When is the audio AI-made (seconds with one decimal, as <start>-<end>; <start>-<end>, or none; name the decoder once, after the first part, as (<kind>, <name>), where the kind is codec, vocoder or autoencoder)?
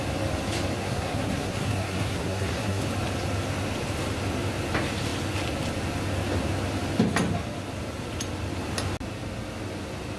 0.8-2.8 (codec, SNAC)